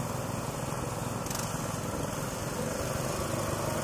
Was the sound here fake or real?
real